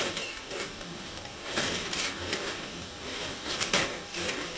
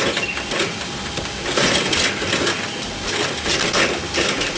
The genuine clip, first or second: second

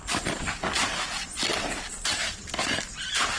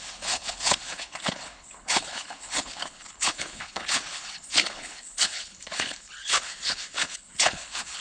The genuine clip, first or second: first